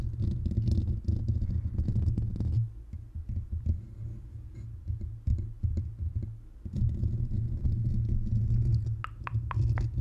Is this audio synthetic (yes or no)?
no